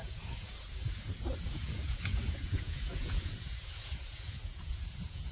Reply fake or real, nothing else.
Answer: fake